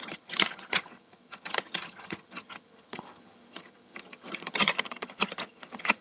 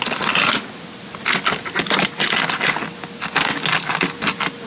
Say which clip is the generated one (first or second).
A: first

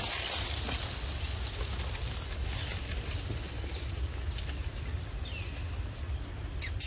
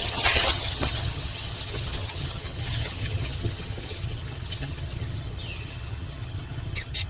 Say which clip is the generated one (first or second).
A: second